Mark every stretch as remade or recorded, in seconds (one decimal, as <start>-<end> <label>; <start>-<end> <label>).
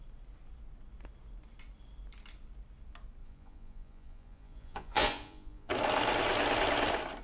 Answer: 0.0-3.2 recorded; 3.2-5.7 remade; 5.7-7.2 recorded